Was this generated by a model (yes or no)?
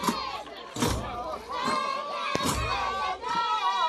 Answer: no